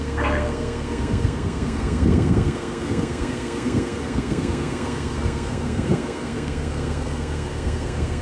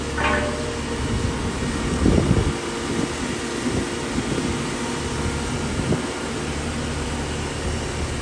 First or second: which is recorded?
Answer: second